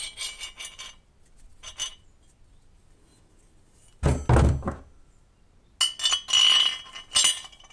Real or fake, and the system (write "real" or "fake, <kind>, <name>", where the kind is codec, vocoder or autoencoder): real